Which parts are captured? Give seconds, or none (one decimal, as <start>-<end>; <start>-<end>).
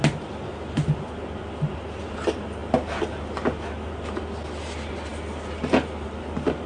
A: 0.0-6.7